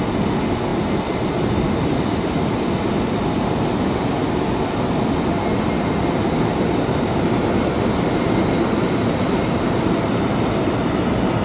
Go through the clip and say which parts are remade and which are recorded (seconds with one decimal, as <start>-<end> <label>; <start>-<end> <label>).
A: 0.0-11.4 recorded

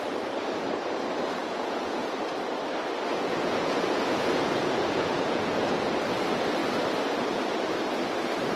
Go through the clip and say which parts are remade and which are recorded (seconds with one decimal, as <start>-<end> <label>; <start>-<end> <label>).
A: 0.0-1.4 recorded; 1.4-2.1 remade; 2.1-3.1 recorded; 3.1-5.9 remade; 5.9-8.6 recorded

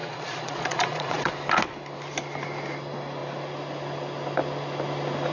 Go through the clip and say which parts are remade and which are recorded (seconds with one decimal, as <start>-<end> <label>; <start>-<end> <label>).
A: 0.0-1.3 remade; 1.3-5.3 recorded

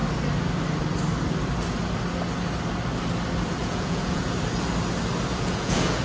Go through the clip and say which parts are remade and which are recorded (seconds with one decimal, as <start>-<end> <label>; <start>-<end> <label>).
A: 0.0-3.6 recorded; 3.6-4.2 remade; 4.2-5.3 recorded; 5.3-6.0 remade

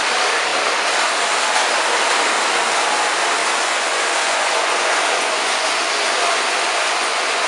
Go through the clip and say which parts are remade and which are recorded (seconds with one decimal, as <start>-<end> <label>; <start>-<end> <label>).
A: 0.0-3.4 recorded; 3.4-7.5 remade